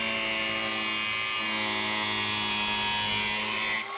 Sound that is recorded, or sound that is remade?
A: recorded